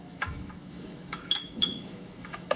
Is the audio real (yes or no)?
no